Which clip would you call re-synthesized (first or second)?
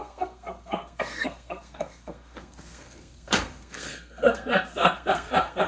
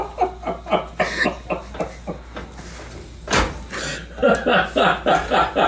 first